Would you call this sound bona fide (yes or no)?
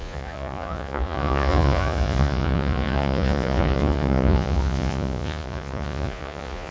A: no